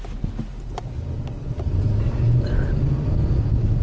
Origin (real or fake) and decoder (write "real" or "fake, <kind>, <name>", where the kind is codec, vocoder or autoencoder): real